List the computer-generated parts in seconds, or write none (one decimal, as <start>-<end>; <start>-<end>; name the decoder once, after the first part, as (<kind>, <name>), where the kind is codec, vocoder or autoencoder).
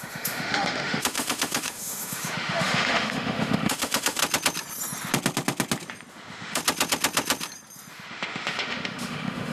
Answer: 0.0-4.2 (autoencoder, DAC-VAE); 6.1-6.6; 7.9-9.5